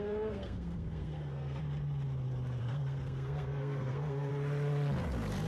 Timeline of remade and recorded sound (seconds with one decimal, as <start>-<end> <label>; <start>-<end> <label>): 0.0-1.6 remade; 1.6-2.6 recorded; 2.6-4.3 remade; 4.3-5.5 recorded